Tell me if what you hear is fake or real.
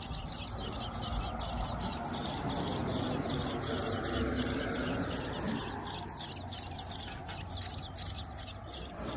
real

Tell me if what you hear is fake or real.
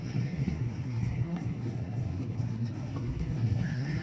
fake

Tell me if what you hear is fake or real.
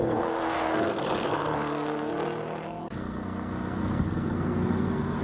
fake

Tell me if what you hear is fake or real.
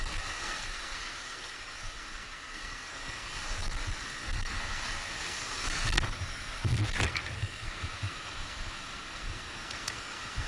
fake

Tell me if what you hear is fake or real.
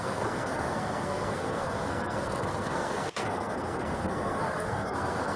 fake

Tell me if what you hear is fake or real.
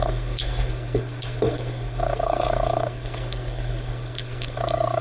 fake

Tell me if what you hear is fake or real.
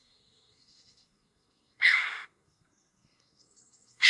fake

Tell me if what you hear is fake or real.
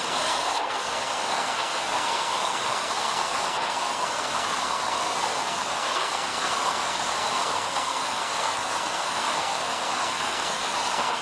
fake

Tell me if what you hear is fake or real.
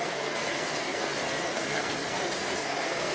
fake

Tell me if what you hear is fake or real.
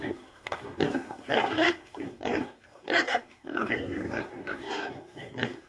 fake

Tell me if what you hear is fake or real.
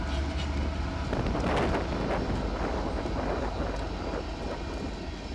real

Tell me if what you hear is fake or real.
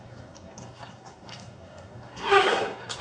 fake